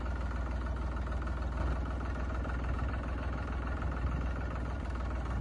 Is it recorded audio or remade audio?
recorded